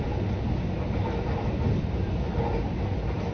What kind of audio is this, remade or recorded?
recorded